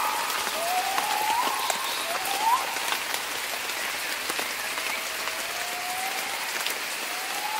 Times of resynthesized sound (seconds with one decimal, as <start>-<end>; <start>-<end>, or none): none